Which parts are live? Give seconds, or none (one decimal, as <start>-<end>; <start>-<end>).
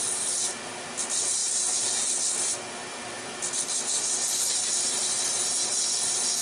0.0-6.4